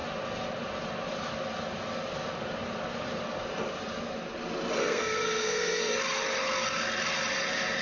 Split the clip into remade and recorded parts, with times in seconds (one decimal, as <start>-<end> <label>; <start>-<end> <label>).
0.0-4.8 recorded; 4.8-5.9 remade; 5.9-7.8 recorded